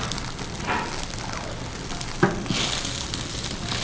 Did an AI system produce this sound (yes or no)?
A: no